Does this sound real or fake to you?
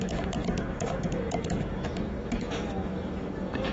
fake